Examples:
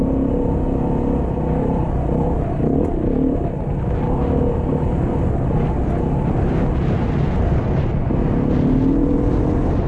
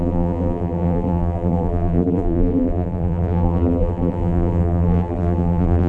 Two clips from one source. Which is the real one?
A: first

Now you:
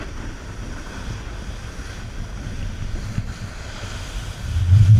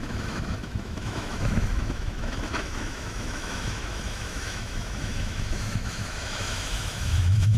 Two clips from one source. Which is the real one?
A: first